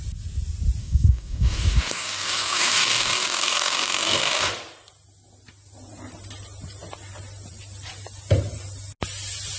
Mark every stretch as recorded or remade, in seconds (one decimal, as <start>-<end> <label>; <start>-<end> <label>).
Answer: 0.0-0.8 recorded; 0.8-4.5 remade; 4.5-9.6 recorded